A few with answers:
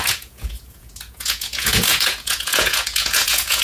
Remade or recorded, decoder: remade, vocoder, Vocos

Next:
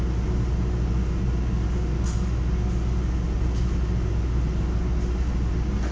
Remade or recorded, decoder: recorded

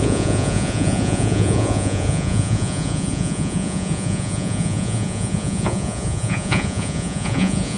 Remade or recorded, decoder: remade, vocoder, Vocos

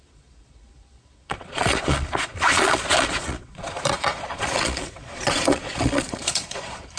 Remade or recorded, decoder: remade, vocoder, Vocos